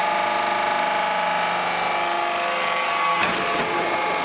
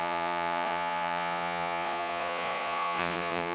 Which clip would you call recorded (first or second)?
first